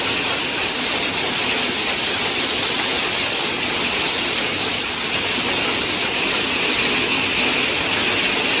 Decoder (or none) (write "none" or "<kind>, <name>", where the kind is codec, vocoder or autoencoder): none